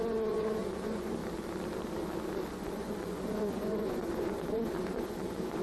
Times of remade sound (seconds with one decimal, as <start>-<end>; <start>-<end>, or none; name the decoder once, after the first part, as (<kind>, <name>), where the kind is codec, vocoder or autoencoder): 0.0-1.2 (vocoder, Vocos); 2.5-5.6